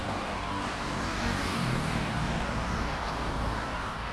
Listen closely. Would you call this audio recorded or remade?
remade